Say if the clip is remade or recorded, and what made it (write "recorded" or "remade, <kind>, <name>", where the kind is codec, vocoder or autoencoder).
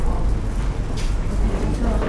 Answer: recorded